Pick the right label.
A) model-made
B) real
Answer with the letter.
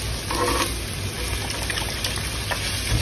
B